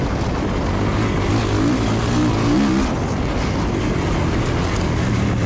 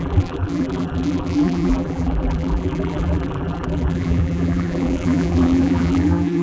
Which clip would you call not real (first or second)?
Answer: second